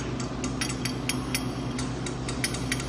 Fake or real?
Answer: real